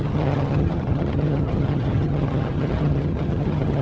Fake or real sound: fake